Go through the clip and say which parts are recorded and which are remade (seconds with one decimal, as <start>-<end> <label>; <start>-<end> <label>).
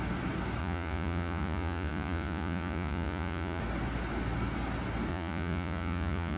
0.0-0.6 recorded; 0.6-3.6 remade; 3.6-5.1 recorded; 5.1-6.4 remade